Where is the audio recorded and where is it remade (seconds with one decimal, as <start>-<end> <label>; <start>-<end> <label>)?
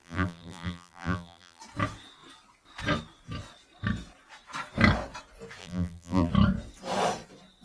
0.0-1.6 remade; 1.6-5.6 recorded; 5.6-6.3 remade; 6.3-7.6 recorded